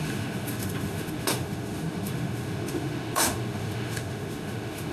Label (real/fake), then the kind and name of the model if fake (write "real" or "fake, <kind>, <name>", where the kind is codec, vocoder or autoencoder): fake, autoencoder, DAC-VAE